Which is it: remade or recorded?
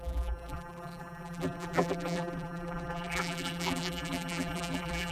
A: remade